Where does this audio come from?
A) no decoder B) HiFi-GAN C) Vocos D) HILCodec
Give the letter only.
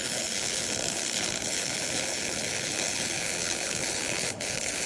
D